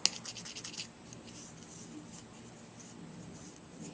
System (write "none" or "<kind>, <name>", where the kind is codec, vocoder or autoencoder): none